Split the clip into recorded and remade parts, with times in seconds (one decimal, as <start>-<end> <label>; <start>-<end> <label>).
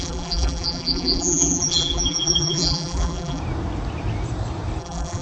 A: 0.0-3.4 remade; 3.4-4.8 recorded; 4.8-5.2 remade